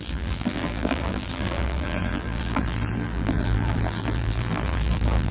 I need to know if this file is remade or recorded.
remade